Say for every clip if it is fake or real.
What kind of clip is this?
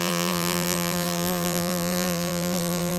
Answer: fake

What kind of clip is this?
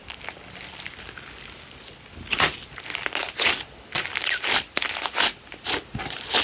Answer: real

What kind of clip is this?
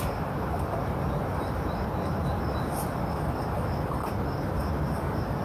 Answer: real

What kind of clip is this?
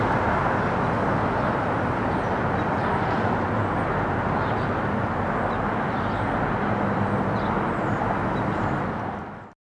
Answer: real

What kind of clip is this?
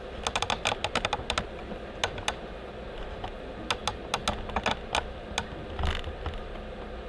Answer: real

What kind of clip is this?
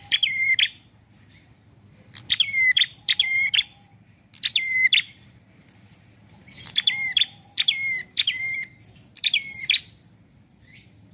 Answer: fake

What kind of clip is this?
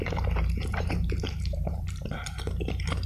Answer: fake